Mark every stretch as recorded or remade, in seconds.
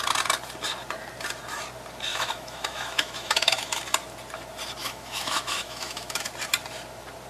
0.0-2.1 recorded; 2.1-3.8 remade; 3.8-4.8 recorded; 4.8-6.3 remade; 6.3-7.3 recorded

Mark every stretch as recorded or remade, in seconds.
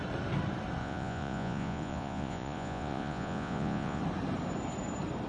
0.0-0.8 recorded; 0.8-4.0 remade; 4.0-5.3 recorded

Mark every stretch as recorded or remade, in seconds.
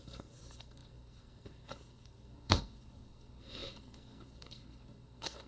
0.0-5.5 remade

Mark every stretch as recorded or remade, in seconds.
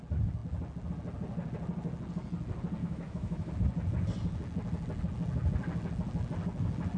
0.0-2.8 recorded; 2.8-3.5 remade; 3.5-7.0 recorded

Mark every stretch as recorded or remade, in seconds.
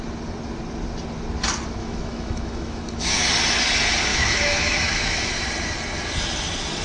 0.0-1.8 recorded; 1.8-3.3 remade; 3.3-4.1 recorded; 4.1-5.3 remade; 5.3-6.8 recorded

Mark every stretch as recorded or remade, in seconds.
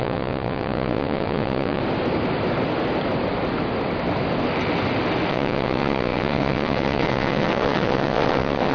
0.0-1.8 remade; 1.8-5.3 recorded; 5.3-8.7 remade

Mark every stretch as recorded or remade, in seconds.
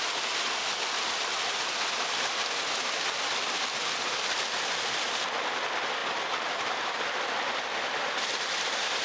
0.0-9.0 recorded